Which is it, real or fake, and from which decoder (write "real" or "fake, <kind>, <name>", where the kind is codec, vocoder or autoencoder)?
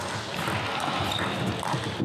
real